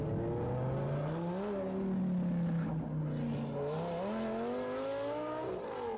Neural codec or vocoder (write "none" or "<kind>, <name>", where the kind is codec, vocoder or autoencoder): none